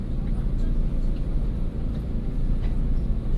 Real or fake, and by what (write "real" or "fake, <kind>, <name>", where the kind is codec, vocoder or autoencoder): real